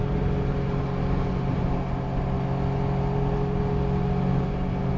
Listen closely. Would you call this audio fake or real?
real